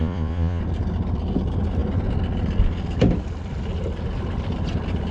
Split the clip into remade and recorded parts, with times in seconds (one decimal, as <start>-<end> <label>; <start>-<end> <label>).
0.0-0.6 remade; 0.6-5.1 recorded